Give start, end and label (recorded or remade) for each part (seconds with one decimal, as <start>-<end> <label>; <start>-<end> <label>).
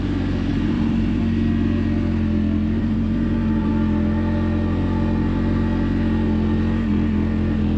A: 0.0-0.5 recorded; 0.5-1.2 remade; 1.2-2.8 recorded; 2.8-3.7 remade; 3.7-7.8 recorded